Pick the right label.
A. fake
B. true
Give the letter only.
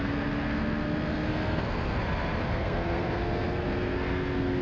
A